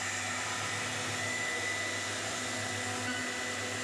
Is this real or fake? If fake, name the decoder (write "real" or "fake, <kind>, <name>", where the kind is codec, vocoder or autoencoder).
real